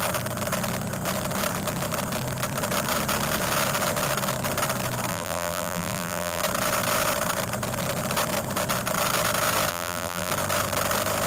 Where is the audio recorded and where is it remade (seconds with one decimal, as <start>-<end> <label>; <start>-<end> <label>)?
0.0-5.1 recorded; 5.1-6.4 remade; 6.4-9.7 recorded; 9.7-10.3 remade; 10.3-11.3 recorded